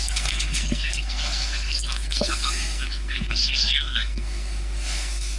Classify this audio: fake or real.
fake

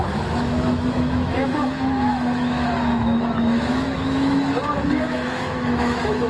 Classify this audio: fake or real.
fake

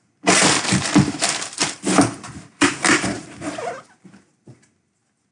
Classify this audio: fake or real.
real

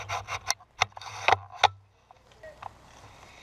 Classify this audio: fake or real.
real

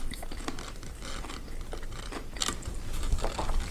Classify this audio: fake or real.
real